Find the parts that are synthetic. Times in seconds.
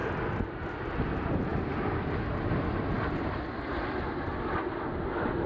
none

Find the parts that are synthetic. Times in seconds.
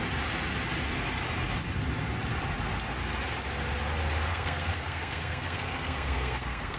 4.3-6.8 (codec, SNAC)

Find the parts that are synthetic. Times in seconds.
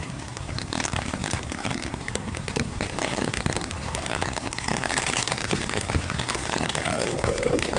0.0-7.8 (codec, SNAC)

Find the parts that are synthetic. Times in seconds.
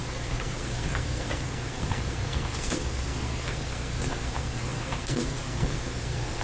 0.0-6.4 (codec, SNAC)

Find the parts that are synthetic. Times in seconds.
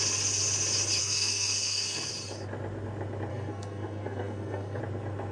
1.0-2.1 (codec, SNAC); 3.3-4.8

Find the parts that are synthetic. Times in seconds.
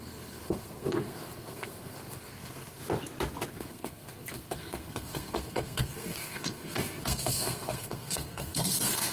0.0-2.8 (codec, SNAC); 3.5-9.1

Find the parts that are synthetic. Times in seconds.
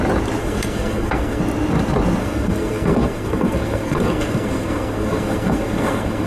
0.4-1.4 (codec, SNAC); 2.2-6.3